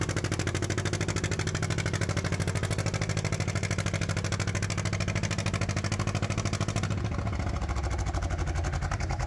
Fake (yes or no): no